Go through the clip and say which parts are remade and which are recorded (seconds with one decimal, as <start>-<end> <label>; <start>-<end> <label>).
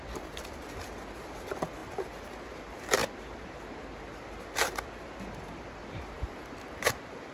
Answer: 0.0-7.3 recorded